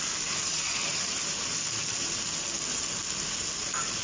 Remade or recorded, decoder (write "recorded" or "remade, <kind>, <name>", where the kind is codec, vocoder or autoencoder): recorded